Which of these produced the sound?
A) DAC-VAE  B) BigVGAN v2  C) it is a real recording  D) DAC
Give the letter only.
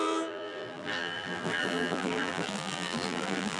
B